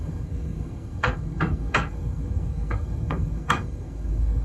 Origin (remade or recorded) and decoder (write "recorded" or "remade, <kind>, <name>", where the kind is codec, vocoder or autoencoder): remade, codec, SNAC